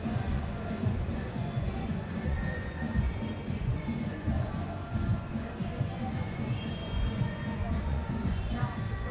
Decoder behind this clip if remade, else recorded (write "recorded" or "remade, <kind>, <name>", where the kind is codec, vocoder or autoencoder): remade, vocoder, Vocos